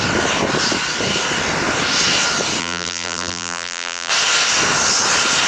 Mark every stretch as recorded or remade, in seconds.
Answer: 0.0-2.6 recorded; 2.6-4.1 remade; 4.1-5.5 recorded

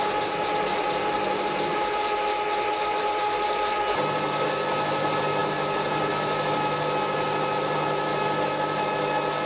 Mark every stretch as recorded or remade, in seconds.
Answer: 0.0-9.5 recorded

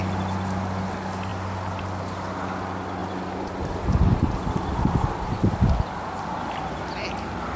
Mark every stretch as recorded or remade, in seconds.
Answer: 0.0-3.0 recorded; 3.0-4.4 remade; 4.4-7.6 recorded

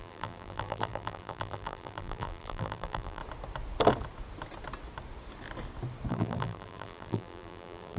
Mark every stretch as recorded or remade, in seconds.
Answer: 0.0-3.2 remade; 3.2-6.1 recorded; 6.1-8.0 remade

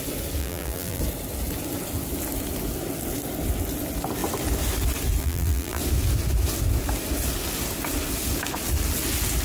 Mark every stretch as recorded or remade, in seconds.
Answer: 0.0-0.4 recorded; 0.4-1.0 remade; 1.0-5.2 recorded; 5.2-5.8 remade; 5.8-9.4 recorded

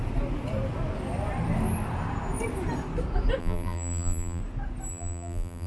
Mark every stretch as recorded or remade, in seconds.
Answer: 0.0-3.4 recorded; 3.4-4.4 remade; 4.4-4.9 recorded; 4.9-5.7 remade